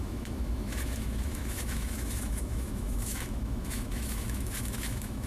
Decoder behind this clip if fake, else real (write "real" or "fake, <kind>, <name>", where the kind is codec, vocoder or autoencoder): fake, autoencoder, DAC-VAE